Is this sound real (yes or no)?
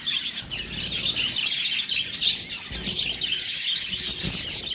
yes